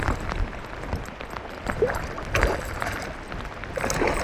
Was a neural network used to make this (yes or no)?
no